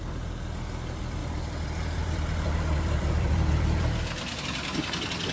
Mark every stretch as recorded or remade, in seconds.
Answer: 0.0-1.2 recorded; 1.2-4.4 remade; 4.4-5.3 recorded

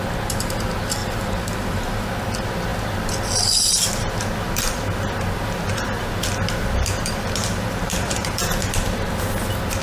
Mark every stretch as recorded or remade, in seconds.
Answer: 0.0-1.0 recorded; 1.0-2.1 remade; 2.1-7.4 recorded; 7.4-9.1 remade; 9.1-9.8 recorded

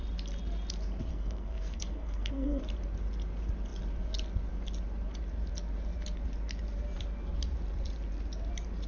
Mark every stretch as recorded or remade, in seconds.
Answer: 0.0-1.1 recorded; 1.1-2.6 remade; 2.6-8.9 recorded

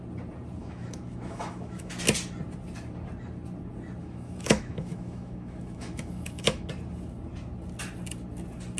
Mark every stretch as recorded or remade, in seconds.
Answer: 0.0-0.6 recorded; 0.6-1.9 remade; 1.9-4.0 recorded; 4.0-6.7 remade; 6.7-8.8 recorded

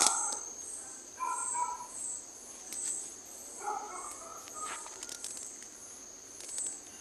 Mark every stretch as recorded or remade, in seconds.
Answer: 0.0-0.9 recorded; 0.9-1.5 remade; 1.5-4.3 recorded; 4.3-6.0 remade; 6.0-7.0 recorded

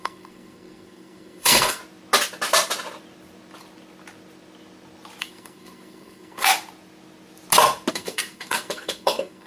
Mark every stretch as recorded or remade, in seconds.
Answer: 0.0-1.8 remade; 1.8-5.2 recorded; 5.2-6.5 remade; 6.5-7.9 recorded; 7.9-9.5 remade

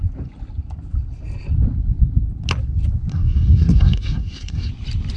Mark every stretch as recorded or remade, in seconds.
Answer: 0.0-3.1 recorded; 3.1-4.7 remade; 4.7-5.2 recorded